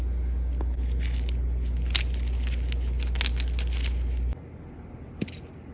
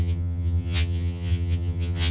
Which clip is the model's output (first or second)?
second